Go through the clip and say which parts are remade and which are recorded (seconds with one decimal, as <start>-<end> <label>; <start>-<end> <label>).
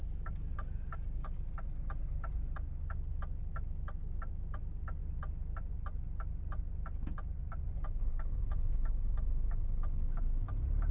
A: 0.0-1.3 remade; 1.3-10.9 recorded